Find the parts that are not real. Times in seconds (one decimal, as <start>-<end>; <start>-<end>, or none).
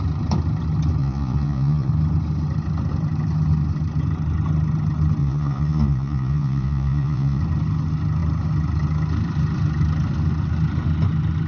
1.0-1.9; 5.2-7.4